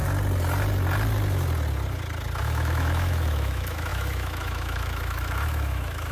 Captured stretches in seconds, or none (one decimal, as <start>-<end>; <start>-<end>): 0.0-2.4